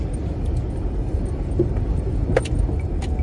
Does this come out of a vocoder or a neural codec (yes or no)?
no